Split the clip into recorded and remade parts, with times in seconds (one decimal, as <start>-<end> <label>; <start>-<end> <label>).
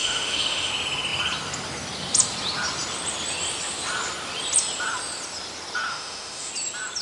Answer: 0.0-0.7 remade; 0.7-5.9 recorded; 5.9-6.5 remade; 6.5-7.0 recorded